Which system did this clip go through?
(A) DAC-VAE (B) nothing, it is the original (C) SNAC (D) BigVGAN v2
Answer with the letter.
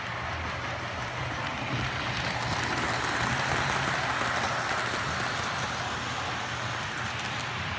B